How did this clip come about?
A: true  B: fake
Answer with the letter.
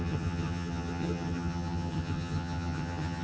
B